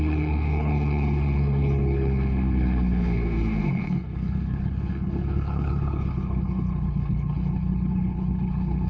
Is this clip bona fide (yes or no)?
no